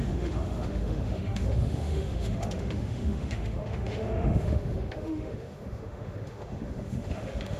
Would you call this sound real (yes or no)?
no